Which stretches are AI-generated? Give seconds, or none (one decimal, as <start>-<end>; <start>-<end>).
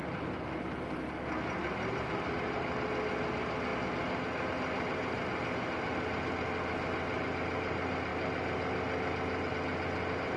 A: none